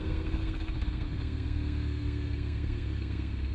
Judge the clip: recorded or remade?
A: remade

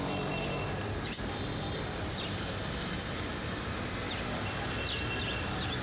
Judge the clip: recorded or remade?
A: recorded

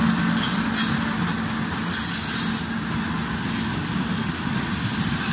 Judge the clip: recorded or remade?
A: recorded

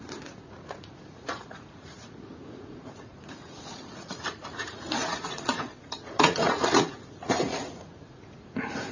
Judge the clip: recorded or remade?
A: remade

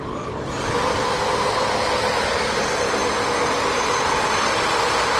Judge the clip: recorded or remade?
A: recorded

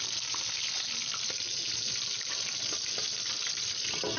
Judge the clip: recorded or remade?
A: recorded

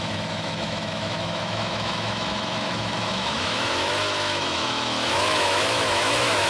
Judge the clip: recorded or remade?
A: remade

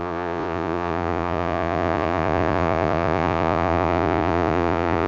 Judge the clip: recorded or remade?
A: remade